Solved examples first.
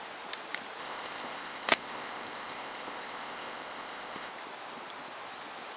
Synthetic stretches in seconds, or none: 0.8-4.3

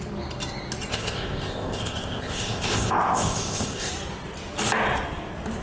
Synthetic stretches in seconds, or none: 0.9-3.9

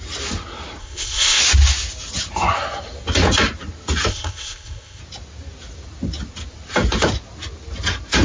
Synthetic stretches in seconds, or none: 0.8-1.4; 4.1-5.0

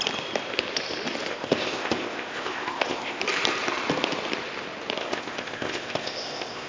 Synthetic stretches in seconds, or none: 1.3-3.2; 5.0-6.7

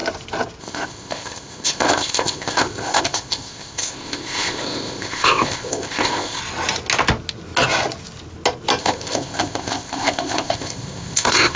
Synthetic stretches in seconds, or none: 0.6-6.4; 8.8-11.6